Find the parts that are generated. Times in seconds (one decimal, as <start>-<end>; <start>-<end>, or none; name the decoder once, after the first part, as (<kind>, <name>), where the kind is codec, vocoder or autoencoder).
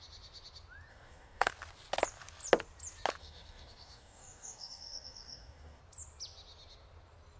0.9-1.5 (codec, DAC); 3.2-5.8